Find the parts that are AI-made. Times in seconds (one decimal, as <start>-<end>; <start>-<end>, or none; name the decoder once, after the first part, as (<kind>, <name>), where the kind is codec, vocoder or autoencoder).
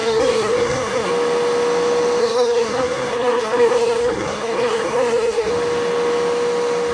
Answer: 0.0-1.1 (codec, SNAC); 2.2-5.5